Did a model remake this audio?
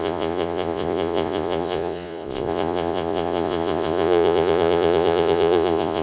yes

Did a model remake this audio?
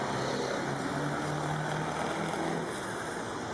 no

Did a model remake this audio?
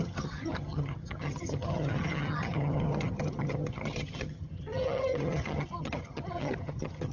yes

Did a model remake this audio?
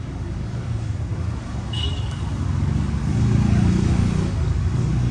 yes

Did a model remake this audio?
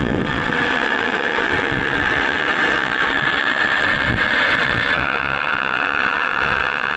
yes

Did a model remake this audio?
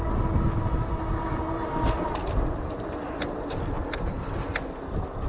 no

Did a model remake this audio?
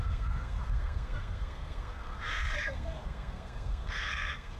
yes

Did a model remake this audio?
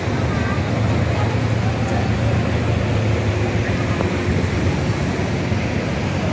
no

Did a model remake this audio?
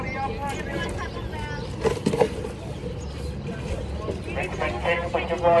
no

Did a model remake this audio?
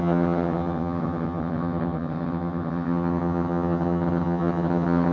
yes